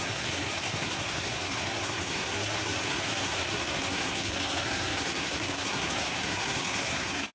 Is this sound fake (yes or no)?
yes